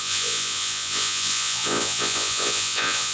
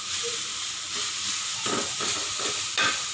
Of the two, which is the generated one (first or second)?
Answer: first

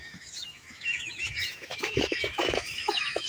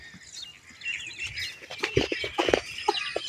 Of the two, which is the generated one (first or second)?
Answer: first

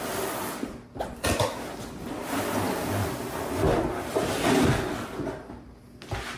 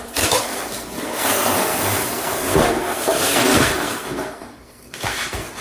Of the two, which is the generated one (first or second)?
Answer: second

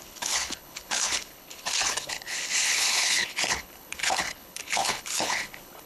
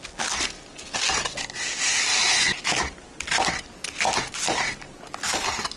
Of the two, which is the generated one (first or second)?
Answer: first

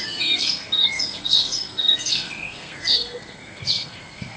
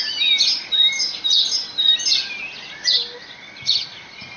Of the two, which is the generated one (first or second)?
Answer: first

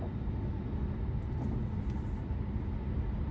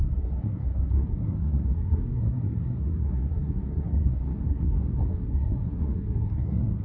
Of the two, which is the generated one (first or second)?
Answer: second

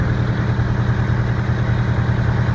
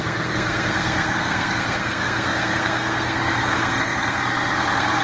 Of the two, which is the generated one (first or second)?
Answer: second